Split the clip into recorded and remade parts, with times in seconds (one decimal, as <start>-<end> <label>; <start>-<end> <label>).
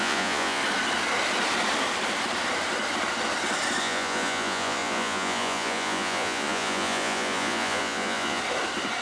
0.0-0.6 remade; 0.6-3.8 recorded; 3.8-8.4 remade; 8.4-9.0 recorded